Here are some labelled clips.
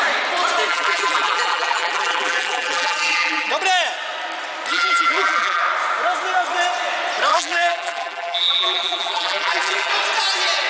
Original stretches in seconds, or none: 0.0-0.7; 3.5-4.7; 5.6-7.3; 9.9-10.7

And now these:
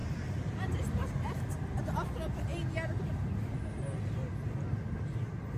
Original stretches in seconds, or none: 0.0-5.6

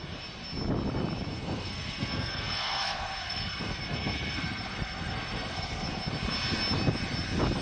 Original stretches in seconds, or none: 0.0-1.3; 5.9-7.6